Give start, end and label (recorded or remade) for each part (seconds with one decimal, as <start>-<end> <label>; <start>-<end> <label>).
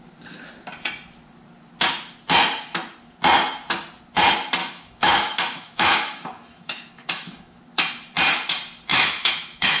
0.0-4.6 recorded; 4.6-7.6 remade; 7.6-8.9 recorded; 8.9-9.8 remade